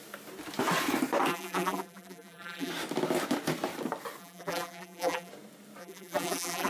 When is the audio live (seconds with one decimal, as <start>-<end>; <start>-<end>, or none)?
0.0-1.3; 2.7-4.2; 5.3-5.8